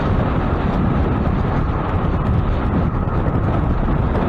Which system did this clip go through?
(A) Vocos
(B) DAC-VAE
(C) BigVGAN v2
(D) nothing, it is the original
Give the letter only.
D